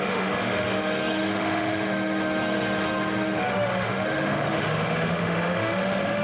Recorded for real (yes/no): no